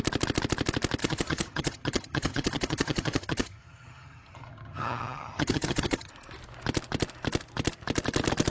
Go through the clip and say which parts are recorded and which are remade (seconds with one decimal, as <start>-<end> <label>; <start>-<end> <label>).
0.0-1.0 recorded; 1.0-6.1 remade; 6.1-8.5 recorded